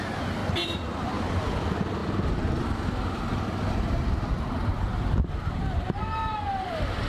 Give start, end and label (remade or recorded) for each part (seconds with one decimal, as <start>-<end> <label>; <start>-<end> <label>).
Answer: 0.0-7.1 recorded